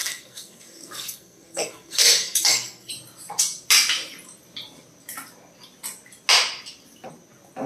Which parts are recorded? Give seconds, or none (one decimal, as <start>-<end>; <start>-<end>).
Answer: 2.9-7.7